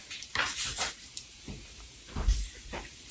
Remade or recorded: remade